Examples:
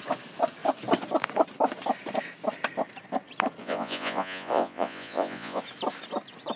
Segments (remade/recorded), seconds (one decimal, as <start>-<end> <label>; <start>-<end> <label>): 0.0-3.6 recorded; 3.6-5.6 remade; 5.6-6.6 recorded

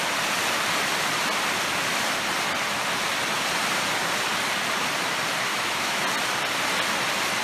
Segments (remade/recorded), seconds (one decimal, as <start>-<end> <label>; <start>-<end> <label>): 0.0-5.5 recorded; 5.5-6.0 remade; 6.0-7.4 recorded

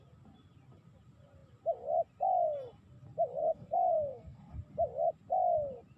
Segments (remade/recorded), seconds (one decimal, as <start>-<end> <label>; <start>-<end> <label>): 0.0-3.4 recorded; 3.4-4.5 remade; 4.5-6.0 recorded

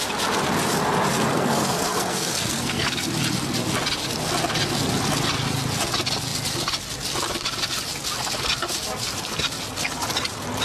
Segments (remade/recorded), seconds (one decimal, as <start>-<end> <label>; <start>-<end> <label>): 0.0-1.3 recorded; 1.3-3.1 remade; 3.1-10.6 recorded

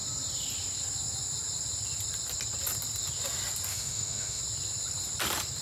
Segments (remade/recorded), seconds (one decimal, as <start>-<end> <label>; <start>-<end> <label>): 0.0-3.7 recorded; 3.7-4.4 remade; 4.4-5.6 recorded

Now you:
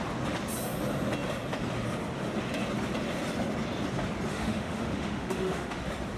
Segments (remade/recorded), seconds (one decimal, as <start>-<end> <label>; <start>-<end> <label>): 0.0-4.3 recorded; 4.3-5.8 remade; 5.8-6.2 recorded

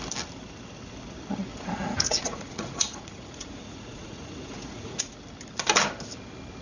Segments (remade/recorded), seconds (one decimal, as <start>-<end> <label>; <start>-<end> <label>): 0.0-1.5 recorded; 1.5-5.1 remade; 5.1-6.6 recorded

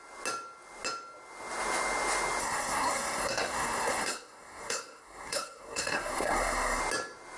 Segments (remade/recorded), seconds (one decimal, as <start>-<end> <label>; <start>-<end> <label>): 0.0-2.4 recorded; 2.4-6.8 remade; 6.8-7.4 recorded